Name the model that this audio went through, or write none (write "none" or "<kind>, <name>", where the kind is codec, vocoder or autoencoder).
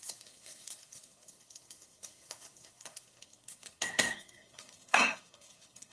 codec, SNAC